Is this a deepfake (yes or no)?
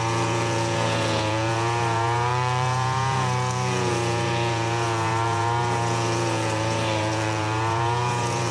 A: yes